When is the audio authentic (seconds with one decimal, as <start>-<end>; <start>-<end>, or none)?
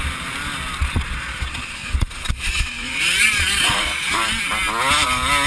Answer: 0.0-0.8; 4.1-5.5